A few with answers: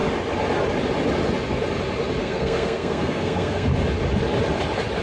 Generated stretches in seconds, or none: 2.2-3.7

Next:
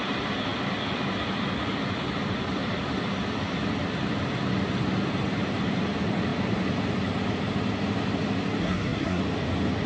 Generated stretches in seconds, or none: 8.6-9.2

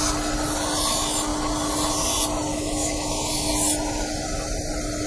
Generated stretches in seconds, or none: 2.5-3.5

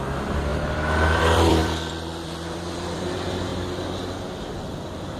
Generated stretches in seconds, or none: 0.0-5.2

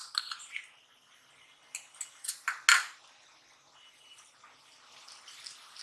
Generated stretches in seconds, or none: none